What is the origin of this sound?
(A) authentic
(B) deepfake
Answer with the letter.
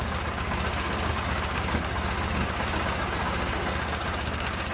B